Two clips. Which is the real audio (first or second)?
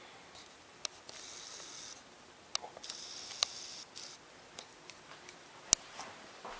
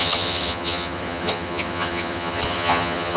first